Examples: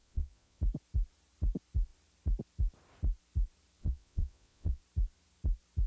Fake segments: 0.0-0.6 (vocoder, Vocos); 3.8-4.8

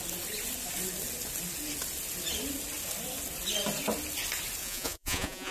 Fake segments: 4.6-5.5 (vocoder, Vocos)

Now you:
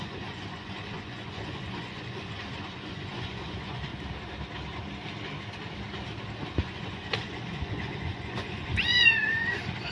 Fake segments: 0.0-3.9 (vocoder, Vocos); 6.5-9.9